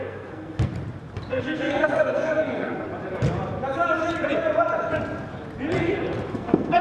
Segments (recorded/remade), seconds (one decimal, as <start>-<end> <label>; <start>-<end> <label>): 0.0-0.7 remade; 0.7-1.3 recorded; 1.3-2.7 remade; 2.7-6.3 recorded; 6.3-6.8 remade